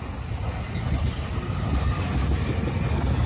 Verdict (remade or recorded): recorded